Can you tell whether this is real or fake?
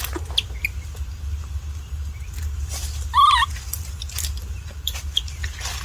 real